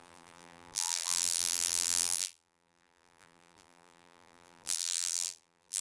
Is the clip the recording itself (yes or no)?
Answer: no